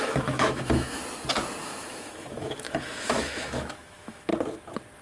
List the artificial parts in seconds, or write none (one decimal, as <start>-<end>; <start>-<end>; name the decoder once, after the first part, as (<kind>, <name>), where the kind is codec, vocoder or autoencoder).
0.0-1.0 (autoencoder, DAC-VAE); 1.6-4.3